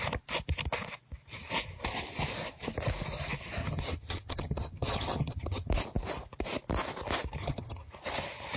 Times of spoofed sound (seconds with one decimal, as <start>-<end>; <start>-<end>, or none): 3.6-5.7; 7.4-7.9